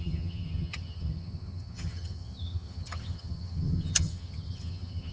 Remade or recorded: remade